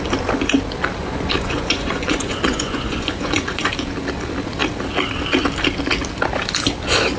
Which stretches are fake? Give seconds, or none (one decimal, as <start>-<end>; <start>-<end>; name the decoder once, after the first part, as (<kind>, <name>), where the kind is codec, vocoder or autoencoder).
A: 1.0-3.7 (vocoder, Vocos)

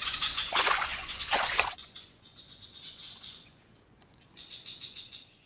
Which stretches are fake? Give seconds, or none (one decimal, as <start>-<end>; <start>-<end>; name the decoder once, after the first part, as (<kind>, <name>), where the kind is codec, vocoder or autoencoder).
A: 0.0-5.5 (vocoder, Vocos)

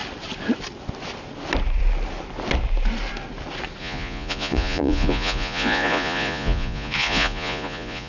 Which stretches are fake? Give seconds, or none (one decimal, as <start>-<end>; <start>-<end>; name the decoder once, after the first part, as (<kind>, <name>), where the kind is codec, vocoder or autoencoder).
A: 3.8-8.1 (vocoder, Vocos)

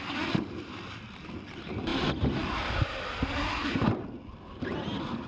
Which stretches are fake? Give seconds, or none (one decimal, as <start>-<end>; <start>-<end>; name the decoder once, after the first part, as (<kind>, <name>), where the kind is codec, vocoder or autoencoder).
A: none

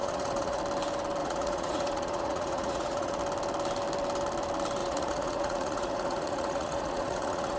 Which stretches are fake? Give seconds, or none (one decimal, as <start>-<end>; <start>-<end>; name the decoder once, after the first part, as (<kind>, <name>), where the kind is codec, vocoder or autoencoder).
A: 0.0-0.6 (vocoder, Vocos); 1.2-3.2; 4.8-7.6

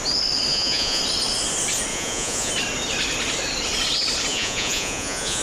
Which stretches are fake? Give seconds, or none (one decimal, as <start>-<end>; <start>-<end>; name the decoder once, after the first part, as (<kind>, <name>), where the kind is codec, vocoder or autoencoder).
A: 0.5-1.0 (vocoder, Vocos); 1.9-2.5; 4.3-5.4